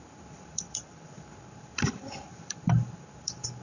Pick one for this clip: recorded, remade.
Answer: remade